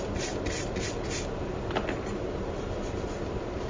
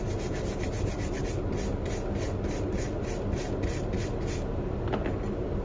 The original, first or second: second